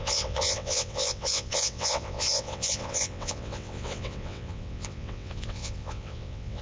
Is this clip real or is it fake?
fake